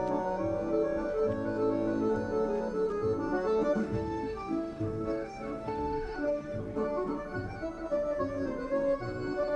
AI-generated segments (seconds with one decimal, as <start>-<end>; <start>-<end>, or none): 3.8-6.6